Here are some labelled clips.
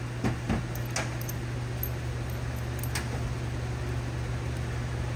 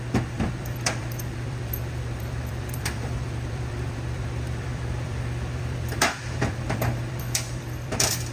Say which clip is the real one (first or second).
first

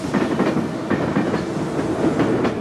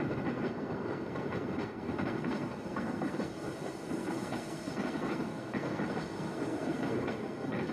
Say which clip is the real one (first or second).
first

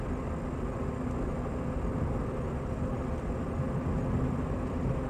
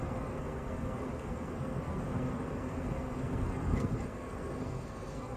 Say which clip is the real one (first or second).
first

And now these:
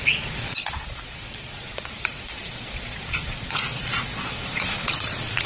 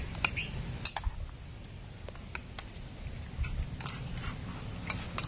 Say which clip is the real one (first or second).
second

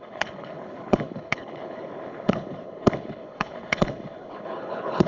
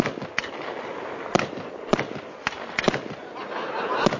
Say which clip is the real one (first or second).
second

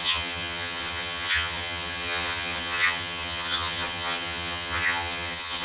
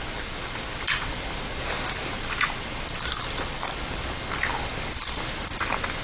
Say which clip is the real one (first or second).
second